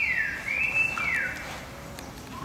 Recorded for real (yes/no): yes